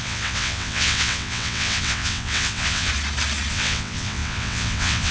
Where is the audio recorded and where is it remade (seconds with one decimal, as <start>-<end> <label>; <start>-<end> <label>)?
0.0-2.9 remade; 2.9-3.5 recorded; 3.5-5.1 remade